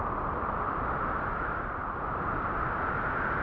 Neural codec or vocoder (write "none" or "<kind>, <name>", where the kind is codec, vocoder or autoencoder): none